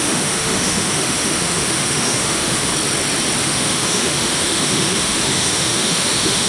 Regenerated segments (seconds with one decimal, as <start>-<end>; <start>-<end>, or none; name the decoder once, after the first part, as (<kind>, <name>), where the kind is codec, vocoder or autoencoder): 0.0-2.7 (autoencoder, DAC-VAE); 3.4-6.5